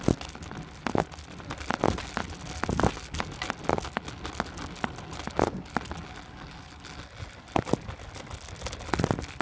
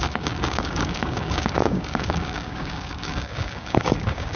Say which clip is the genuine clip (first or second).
first